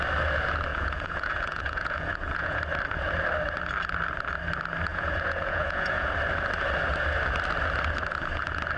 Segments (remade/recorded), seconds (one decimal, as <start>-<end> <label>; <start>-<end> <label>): 0.0-0.7 recorded; 0.7-2.6 remade; 2.6-4.9 recorded; 4.9-6.1 remade; 6.1-8.8 recorded